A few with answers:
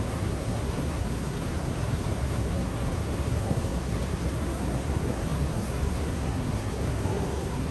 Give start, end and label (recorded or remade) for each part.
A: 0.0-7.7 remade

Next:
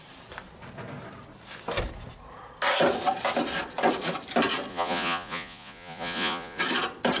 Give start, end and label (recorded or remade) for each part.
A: 0.0-4.7 recorded; 4.7-6.6 remade; 6.6-7.2 recorded

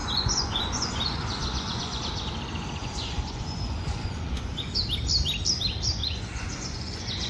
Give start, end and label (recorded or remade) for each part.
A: 0.0-2.0 remade; 2.0-2.8 recorded; 2.8-4.8 remade; 4.8-6.0 recorded; 6.0-7.3 remade

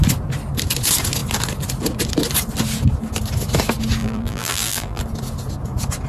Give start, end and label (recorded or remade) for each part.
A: 0.0-4.0 recorded; 4.0-5.0 remade; 5.0-6.1 recorded